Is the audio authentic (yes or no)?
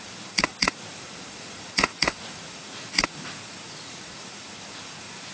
no